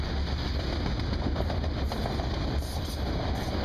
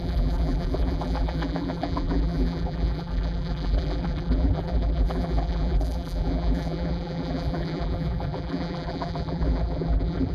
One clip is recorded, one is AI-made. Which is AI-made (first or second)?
second